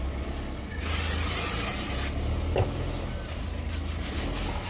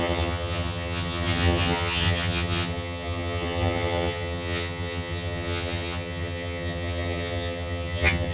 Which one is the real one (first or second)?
first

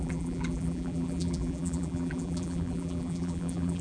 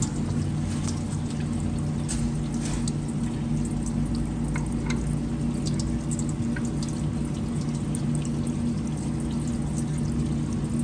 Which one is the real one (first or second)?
second